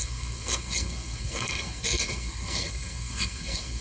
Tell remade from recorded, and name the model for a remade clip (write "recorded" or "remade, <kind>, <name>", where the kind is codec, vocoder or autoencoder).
remade, codec, SNAC